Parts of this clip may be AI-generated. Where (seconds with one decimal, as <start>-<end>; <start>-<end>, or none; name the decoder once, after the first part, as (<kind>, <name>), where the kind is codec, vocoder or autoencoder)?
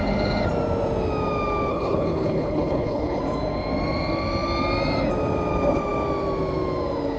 1.7-3.2 (codec, HILCodec)